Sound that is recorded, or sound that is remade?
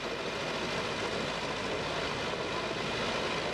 recorded